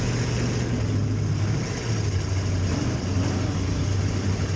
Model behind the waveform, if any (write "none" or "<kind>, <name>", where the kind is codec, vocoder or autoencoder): none